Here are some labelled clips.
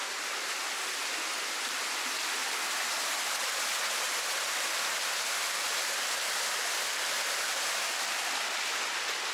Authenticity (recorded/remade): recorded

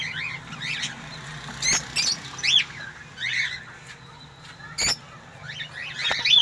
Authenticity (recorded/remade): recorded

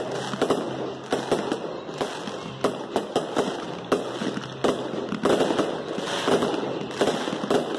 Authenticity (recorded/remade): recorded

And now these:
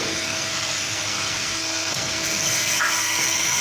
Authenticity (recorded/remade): remade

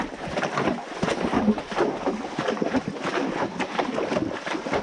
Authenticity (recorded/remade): recorded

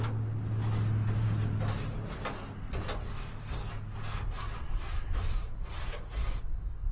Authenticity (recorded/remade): recorded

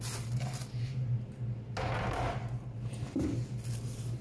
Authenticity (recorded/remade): recorded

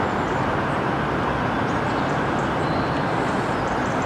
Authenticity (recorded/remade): recorded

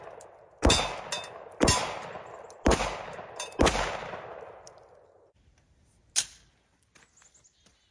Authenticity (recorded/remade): recorded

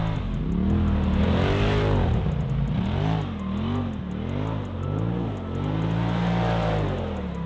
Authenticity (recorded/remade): recorded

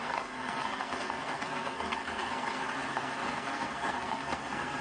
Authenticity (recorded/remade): remade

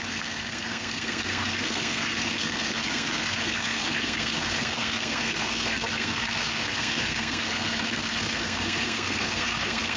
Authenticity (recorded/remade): remade